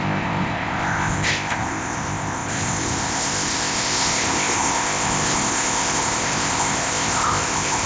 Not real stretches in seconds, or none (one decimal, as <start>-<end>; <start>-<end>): 0.0-7.9